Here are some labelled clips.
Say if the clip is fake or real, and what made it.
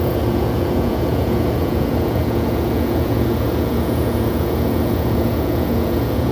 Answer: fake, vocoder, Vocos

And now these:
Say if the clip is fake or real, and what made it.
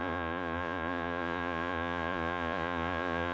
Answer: fake, vocoder, Vocos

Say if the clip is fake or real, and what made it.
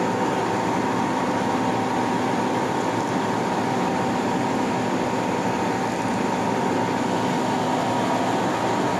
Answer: real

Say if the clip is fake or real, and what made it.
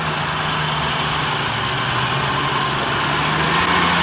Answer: real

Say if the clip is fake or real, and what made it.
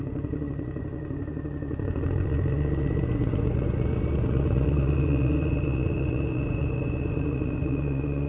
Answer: fake, vocoder, Vocos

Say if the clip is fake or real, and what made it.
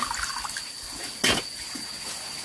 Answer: real